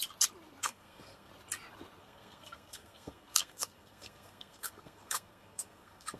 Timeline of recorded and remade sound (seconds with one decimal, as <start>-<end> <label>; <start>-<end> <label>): 0.0-0.6 recorded; 0.6-1.3 remade; 1.3-2.0 recorded; 2.0-6.2 remade